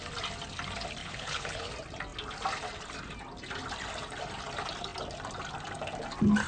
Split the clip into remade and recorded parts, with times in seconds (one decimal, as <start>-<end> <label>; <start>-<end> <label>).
0.0-1.0 recorded; 1.0-1.7 remade; 1.7-6.5 recorded